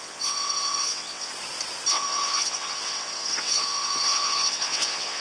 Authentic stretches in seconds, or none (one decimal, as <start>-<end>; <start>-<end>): 1.3-1.9